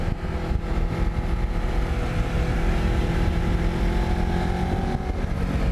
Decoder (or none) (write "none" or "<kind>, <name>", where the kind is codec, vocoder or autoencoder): none